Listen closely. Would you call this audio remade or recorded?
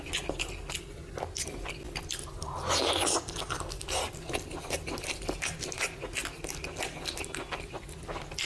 recorded